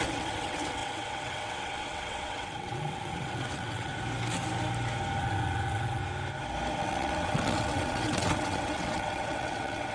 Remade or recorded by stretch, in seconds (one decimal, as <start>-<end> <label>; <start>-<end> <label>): 0.0-3.9 remade; 3.9-5.2 recorded; 5.2-6.0 remade; 6.0-6.8 recorded; 6.8-9.9 remade